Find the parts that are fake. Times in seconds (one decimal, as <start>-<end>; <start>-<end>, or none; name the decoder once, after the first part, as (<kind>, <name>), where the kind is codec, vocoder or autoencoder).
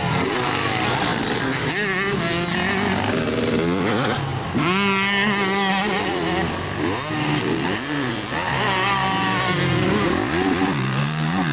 none